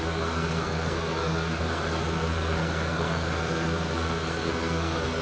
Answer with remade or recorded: remade